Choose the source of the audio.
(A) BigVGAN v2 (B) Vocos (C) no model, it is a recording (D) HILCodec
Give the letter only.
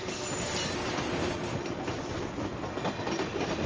C